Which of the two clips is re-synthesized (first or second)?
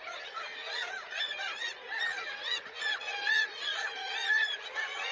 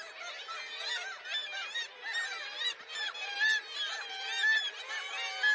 first